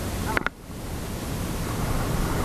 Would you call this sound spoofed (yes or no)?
no